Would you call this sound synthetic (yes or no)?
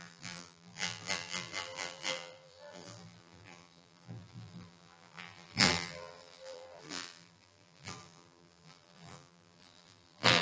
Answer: yes